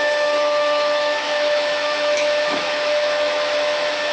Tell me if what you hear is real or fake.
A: fake